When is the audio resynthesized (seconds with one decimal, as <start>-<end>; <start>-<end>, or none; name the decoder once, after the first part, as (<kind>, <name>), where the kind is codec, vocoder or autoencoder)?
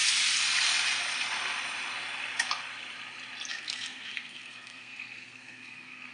3.5-6.1 (codec, SNAC)